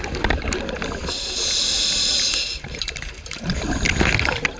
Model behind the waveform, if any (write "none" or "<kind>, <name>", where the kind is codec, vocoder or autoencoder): none